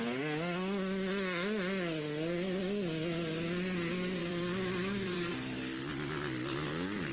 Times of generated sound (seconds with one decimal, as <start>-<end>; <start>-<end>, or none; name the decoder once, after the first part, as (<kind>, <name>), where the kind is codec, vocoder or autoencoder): 4.2-5.9 (vocoder, BigVGAN v2)